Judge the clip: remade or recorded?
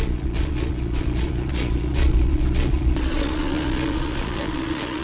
remade